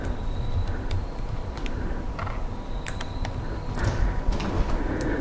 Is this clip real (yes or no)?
no